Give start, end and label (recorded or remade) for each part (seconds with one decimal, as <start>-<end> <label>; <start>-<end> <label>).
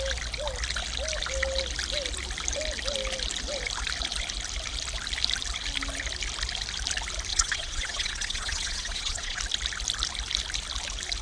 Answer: 0.0-7.3 recorded; 7.3-9.4 remade; 9.4-11.2 recorded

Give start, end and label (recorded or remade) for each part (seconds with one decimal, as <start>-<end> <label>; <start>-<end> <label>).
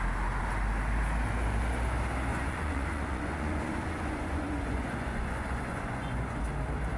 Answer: 0.0-2.3 recorded; 2.3-6.4 remade; 6.4-7.0 recorded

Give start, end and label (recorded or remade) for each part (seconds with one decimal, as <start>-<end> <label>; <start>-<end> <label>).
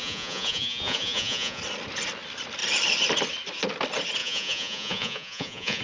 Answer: 0.0-1.6 remade; 1.6-4.2 recorded; 4.2-5.8 remade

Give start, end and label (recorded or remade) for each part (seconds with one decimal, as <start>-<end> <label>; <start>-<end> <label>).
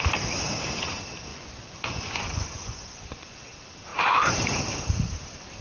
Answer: 0.0-1.3 recorded; 1.3-3.4 remade; 3.4-5.6 recorded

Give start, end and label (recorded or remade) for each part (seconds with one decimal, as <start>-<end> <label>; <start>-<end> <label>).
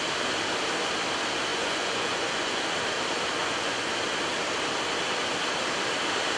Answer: 0.0-1.5 recorded; 1.5-2.6 remade; 2.6-3.4 recorded; 3.4-3.9 remade; 3.9-6.4 recorded